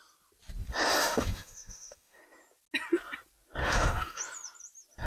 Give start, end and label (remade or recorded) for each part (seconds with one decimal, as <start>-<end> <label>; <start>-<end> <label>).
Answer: 0.0-1.0 recorded; 1.0-2.2 remade; 2.2-3.6 recorded; 3.6-4.2 remade; 4.2-5.1 recorded